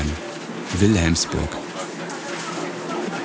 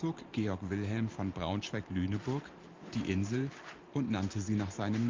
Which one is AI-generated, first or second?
second